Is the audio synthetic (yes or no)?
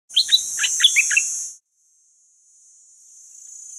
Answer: no